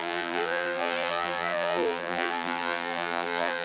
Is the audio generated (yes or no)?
yes